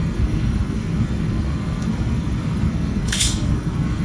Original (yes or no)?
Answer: no